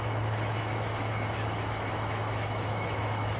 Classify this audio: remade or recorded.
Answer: remade